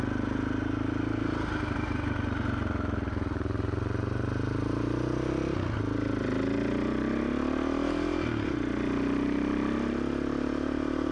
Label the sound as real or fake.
real